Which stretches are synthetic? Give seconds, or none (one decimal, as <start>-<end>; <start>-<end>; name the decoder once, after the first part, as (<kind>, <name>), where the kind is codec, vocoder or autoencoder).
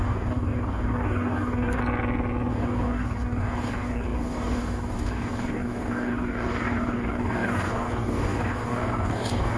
0.0-1.8 (codec, DAC); 2.5-9.6